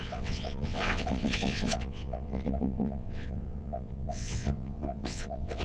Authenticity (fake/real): fake